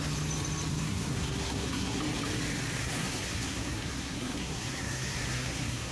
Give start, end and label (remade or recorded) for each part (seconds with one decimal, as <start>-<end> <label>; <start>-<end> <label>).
0.0-0.7 recorded; 0.7-2.0 remade; 2.0-2.8 recorded; 2.8-5.9 remade